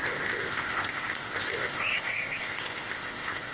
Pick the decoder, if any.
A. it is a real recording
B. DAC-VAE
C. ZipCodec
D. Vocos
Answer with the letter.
C